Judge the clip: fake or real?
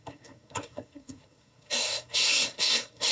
fake